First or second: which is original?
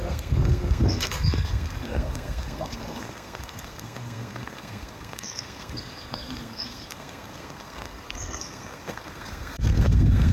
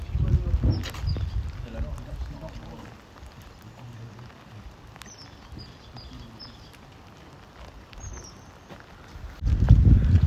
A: second